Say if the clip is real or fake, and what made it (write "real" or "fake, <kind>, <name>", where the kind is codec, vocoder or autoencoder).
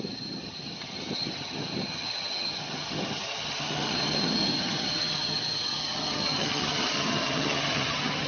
fake, vocoder, HiFi-GAN